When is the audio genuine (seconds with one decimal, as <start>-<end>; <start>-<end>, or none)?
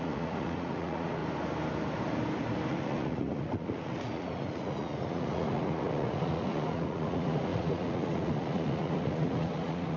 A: 1.2-2.7